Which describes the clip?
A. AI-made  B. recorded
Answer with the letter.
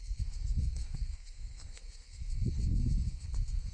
A